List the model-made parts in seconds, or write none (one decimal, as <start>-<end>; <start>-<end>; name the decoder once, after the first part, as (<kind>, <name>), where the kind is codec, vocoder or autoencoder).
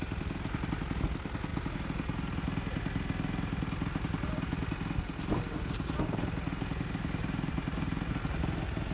7.2-8.9 (vocoder, BigVGAN v2)